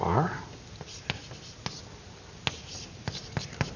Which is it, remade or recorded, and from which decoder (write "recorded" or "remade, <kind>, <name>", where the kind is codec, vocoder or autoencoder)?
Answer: recorded